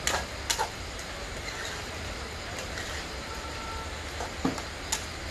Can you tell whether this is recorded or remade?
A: recorded